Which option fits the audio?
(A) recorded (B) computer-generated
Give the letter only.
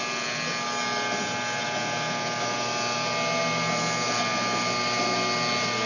A